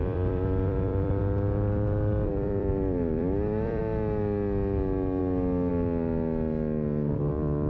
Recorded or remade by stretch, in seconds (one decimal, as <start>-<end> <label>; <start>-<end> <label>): 0.0-1.2 remade; 1.2-2.3 recorded; 2.3-3.8 remade; 3.8-7.7 recorded